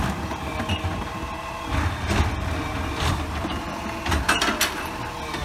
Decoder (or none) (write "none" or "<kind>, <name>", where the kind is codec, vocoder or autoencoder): none